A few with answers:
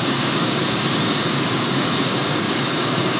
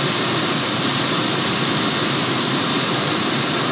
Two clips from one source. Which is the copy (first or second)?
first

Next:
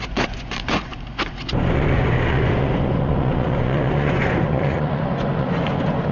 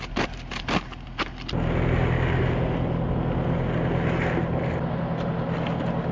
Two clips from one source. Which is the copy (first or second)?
first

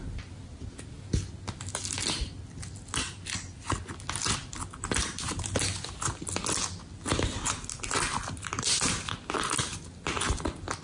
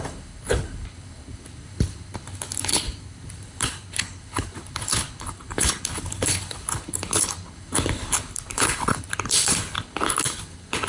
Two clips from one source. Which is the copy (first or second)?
second